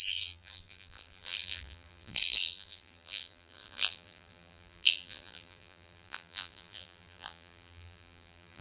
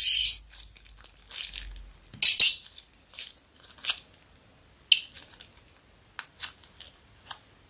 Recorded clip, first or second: second